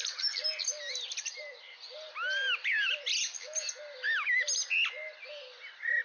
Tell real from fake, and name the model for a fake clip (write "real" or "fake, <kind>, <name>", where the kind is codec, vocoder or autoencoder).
real